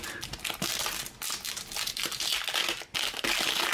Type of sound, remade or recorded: recorded